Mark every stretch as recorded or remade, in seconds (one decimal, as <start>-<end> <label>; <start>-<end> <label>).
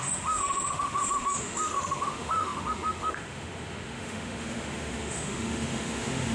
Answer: 0.0-6.3 remade